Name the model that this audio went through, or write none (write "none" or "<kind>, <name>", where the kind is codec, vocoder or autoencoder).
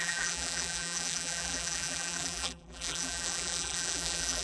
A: vocoder, BigVGAN v2